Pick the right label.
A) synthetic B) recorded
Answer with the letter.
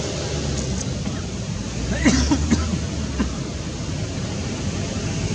B